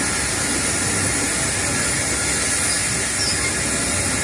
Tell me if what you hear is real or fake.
real